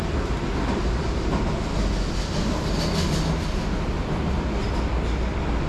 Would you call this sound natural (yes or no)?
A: yes